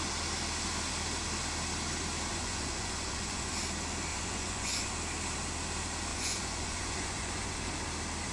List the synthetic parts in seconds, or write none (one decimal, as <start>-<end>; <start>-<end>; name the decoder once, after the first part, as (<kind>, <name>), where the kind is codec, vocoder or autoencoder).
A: 2.3-3.5 (vocoder, Vocos); 4.1-4.9; 6.1-7.7